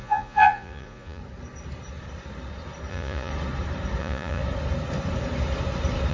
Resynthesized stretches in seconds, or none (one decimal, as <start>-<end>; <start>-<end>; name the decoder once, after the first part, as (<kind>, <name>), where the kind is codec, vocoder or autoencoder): 0.0-1.2 (vocoder, Vocos); 2.9-3.3; 4.0-4.4